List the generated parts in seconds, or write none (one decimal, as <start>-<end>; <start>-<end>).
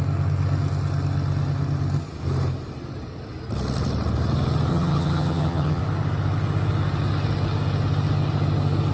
4.7-5.8